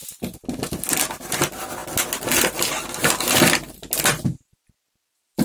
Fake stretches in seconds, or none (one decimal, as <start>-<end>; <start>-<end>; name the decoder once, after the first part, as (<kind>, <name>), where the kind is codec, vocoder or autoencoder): none